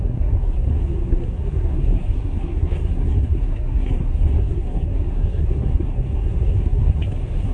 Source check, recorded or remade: remade